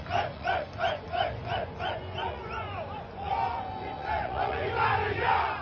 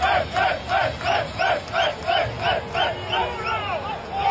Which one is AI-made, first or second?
first